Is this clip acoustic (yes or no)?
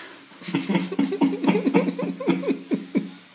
yes